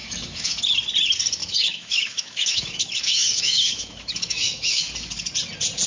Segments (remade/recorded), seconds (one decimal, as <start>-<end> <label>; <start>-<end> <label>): 0.0-0.6 remade; 0.6-1.4 recorded; 1.4-4.9 remade; 4.9-5.9 recorded